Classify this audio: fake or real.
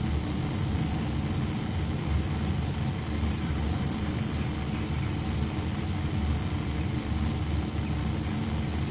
real